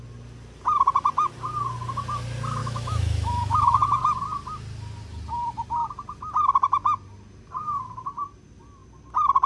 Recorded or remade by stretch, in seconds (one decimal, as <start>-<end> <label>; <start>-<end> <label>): 0.0-2.6 recorded; 2.6-4.2 remade; 4.2-9.5 recorded